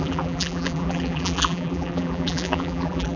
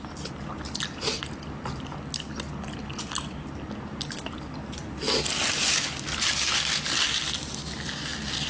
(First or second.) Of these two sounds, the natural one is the second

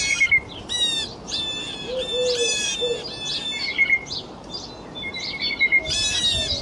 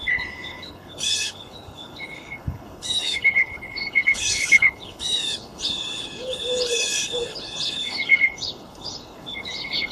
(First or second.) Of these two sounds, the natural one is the first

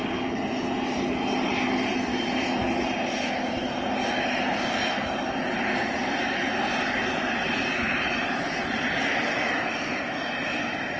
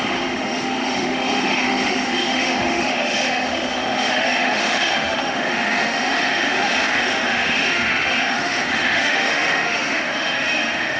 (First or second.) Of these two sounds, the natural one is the first